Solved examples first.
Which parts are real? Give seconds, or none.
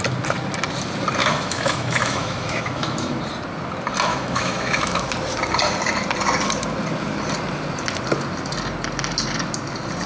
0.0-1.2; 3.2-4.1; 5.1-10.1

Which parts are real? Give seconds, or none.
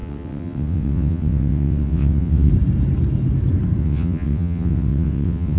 2.5-3.8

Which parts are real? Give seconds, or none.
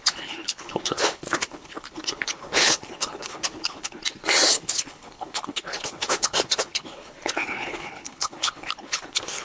4.0-4.5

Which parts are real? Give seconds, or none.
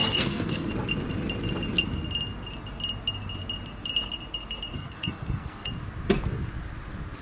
0.7-4.7; 5.7-7.2